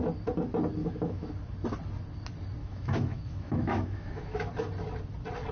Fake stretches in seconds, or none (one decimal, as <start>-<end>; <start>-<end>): 0.8-1.3; 2.6-4.5

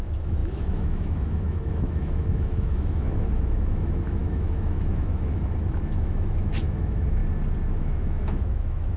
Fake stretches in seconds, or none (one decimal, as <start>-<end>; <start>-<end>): 0.0-7.2; 7.8-9.0